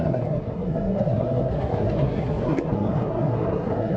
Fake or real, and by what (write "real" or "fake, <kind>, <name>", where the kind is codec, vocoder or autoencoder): fake, codec, SNAC